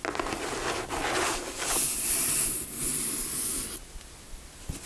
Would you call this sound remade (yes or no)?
no